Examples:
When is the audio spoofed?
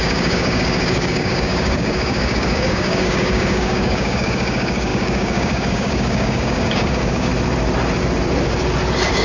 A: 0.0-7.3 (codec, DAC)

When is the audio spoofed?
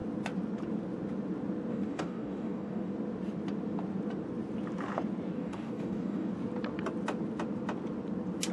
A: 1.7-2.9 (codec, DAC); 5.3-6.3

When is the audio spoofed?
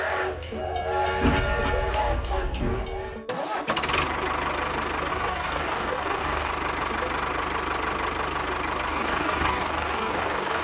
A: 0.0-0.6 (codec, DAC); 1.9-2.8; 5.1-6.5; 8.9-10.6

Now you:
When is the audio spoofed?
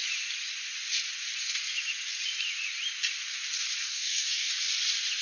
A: 3.8-4.5 (codec, DAC)